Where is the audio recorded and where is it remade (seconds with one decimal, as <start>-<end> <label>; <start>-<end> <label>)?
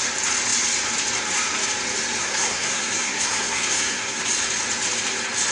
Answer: 0.0-2.2 recorded; 2.2-4.2 remade; 4.2-5.5 recorded